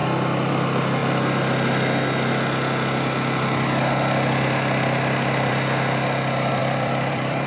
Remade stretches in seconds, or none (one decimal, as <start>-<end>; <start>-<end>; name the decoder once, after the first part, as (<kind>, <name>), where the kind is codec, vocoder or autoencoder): 6.6-7.5 (vocoder, BigVGAN v2)